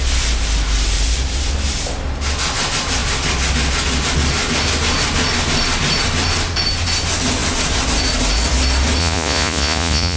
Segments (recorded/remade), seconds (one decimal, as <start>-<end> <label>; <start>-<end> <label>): 0.0-9.0 recorded; 9.0-10.2 remade